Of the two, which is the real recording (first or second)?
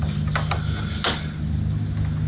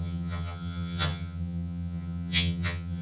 first